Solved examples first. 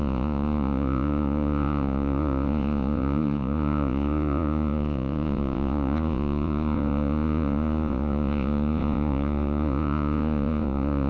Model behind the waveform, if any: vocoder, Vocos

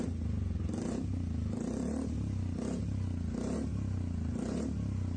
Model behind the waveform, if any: none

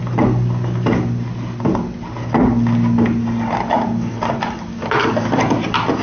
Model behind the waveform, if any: none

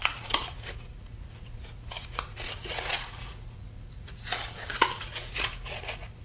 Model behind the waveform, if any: vocoder, Vocos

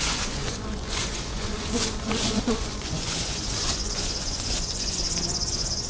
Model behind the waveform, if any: vocoder, Vocos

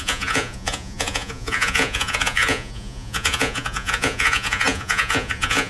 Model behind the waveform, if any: vocoder, Vocos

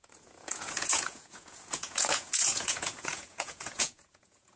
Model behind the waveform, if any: vocoder, Vocos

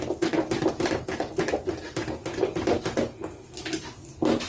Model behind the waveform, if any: none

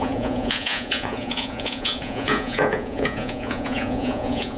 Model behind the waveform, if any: vocoder, Vocos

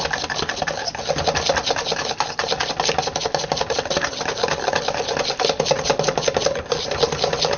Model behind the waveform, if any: none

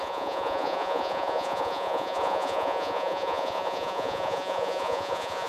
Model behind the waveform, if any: vocoder, Vocos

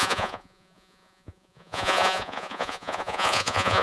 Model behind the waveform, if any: vocoder, Vocos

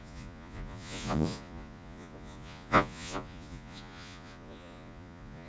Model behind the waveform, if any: vocoder, Vocos